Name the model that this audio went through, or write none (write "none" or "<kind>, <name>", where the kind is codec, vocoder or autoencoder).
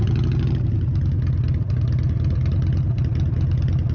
none